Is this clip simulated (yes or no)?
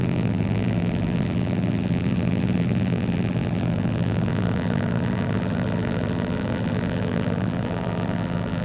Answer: yes